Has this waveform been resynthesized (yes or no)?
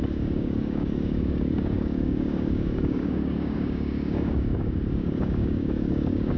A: yes